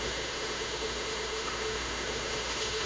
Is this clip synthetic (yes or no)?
yes